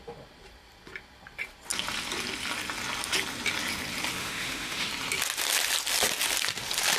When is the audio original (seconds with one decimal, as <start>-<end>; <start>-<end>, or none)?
0.0-4.2; 4.9-7.0